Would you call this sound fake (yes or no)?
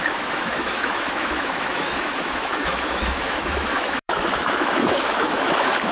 yes